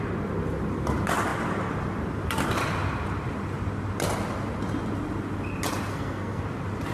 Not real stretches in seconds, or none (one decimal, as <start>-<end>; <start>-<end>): 5.9-6.4